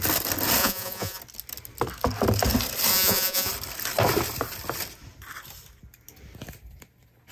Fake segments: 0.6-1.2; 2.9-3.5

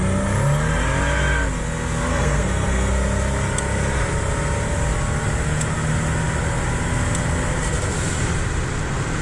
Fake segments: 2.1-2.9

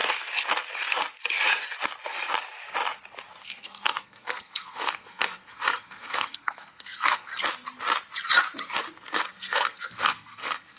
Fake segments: 3.4-7.3; 9.3-10.8